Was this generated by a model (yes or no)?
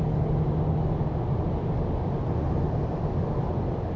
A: no